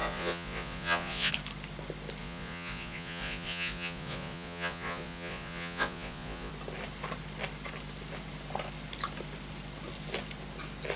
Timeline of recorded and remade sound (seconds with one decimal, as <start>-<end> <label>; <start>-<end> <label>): 0.0-1.3 remade; 1.3-2.2 recorded; 2.2-6.5 remade; 6.5-11.0 recorded